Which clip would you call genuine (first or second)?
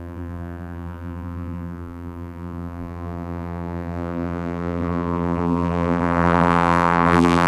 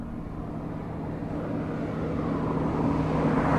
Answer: second